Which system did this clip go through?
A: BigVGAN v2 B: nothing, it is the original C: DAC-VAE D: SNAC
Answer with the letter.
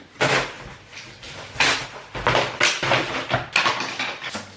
B